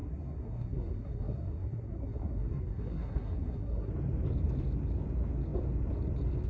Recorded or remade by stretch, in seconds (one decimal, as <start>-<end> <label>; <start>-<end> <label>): 0.0-3.9 remade; 3.9-6.5 recorded